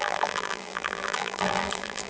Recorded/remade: remade